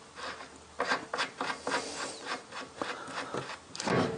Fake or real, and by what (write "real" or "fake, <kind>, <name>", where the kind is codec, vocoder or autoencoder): real